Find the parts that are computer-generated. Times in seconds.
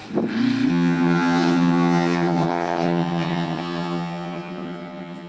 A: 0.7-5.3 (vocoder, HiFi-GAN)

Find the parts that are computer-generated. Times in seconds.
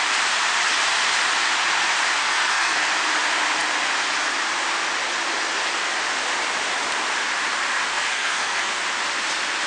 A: 2.2-2.9 (codec, SNAC); 7.9-8.7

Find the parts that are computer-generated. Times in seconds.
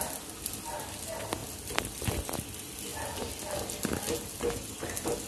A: none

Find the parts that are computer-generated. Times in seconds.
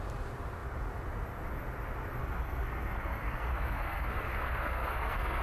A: 2.2-5.4 (codec, SNAC)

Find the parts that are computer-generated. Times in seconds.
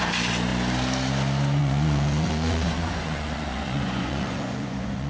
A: 1.6-5.1 (vocoder, Vocos)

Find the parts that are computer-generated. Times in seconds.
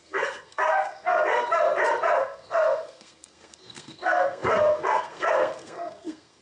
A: 0.0-1.5 (codec, SNAC); 2.2-6.4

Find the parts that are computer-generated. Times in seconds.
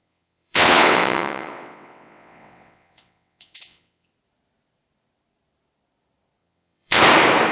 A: 0.0-4.1 (vocoder, WaveNeXt); 6.4-7.0